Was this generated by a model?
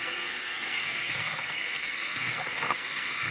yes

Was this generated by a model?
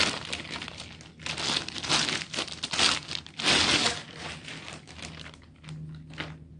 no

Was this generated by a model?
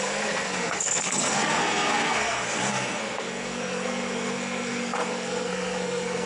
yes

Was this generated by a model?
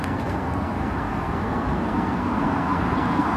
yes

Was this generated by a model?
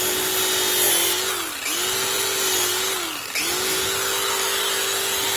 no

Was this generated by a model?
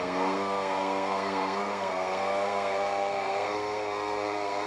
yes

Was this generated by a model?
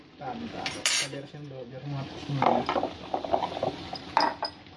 no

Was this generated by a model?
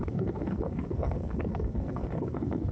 yes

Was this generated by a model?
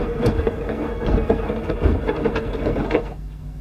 yes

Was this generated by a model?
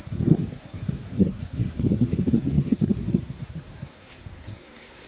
yes